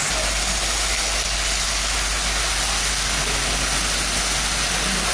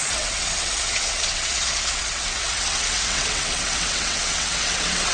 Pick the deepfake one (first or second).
second